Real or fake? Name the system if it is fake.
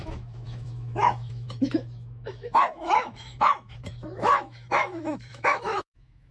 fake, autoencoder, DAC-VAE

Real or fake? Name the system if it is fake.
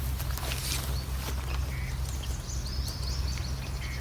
real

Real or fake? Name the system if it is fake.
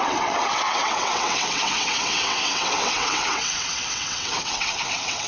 fake, vocoder, WaveNeXt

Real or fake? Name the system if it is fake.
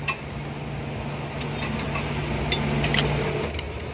real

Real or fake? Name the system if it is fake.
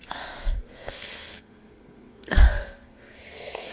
fake, codec, SNAC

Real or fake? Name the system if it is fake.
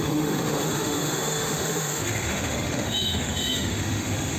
fake, autoencoder, DAC-VAE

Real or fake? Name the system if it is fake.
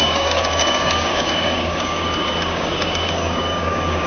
fake, codec, DAC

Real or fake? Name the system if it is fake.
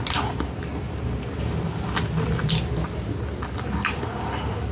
real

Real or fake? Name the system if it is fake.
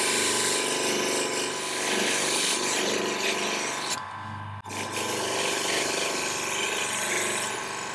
real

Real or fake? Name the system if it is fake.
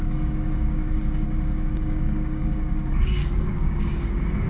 fake, codec, DAC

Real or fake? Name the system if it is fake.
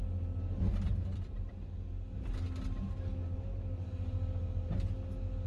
real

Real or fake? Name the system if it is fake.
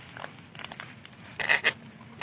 real